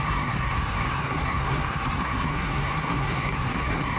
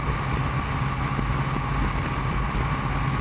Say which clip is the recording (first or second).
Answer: second